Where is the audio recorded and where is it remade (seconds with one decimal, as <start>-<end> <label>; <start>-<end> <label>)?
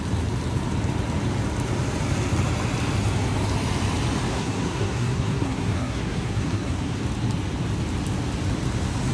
0.0-4.3 recorded; 4.3-7.0 remade; 7.0-9.1 recorded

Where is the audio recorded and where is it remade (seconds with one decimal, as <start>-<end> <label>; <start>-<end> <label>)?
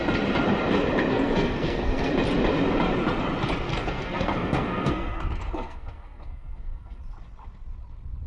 0.0-1.1 recorded; 1.1-2.1 remade; 2.1-3.7 recorded; 3.7-7.0 remade; 7.0-8.3 recorded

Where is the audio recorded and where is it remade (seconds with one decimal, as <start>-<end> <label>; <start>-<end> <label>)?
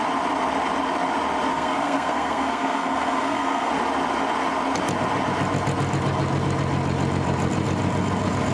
0.0-1.5 recorded; 1.5-3.7 remade; 3.7-8.5 recorded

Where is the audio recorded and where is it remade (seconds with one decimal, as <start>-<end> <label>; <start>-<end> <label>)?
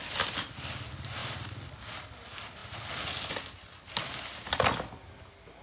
0.0-5.6 recorded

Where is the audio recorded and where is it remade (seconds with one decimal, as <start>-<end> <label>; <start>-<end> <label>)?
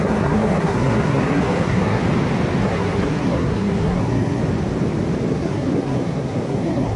0.0-2.0 remade; 2.0-2.6 recorded; 2.6-4.4 remade; 4.4-5.3 recorded; 5.3-7.0 remade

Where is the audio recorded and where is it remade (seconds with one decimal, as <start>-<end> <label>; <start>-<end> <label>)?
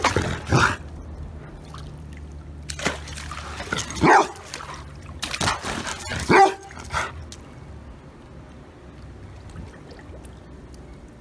0.0-11.2 recorded